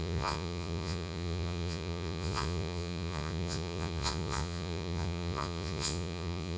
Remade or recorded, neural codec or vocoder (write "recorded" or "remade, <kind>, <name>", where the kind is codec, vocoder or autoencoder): remade, vocoder, Vocos